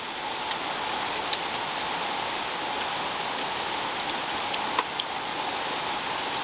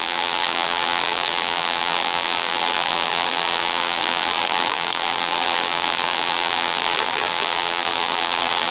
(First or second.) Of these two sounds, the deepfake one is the second